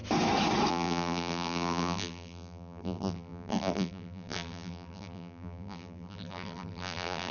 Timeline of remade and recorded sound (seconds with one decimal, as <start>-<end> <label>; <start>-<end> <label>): 0.0-0.7 recorded; 0.7-7.3 remade